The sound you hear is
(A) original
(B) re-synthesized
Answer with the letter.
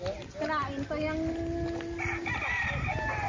A